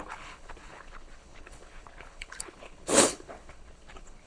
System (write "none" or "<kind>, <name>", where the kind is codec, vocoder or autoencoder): codec, HILCodec